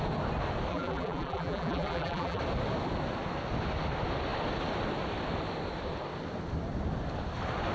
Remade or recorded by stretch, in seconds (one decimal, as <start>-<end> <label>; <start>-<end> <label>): 0.0-0.7 recorded; 0.7-2.4 remade; 2.4-7.7 recorded